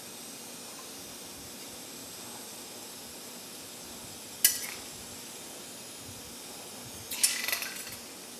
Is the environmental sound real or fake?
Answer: real